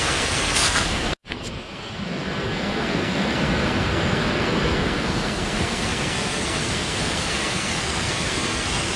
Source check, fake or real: fake